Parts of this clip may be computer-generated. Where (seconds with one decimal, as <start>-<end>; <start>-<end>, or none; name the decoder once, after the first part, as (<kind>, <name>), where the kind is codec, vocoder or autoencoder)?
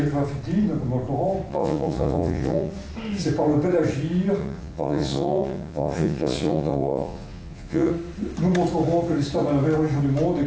1.5-2.7 (vocoder, Vocos); 4.4-7.9